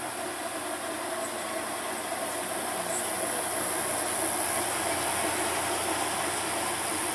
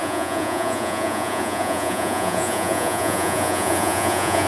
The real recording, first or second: first